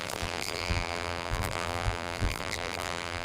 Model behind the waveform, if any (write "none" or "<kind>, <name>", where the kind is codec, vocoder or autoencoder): vocoder, BigVGAN v2